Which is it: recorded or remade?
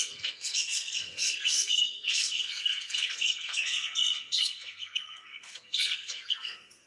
remade